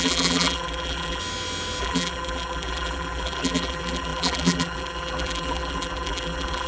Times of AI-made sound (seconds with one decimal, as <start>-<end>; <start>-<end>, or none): 0.0-1.2; 1.8-6.7